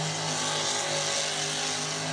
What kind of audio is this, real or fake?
real